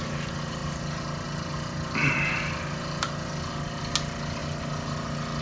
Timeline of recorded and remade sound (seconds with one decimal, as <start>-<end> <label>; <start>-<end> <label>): 0.0-5.4 recorded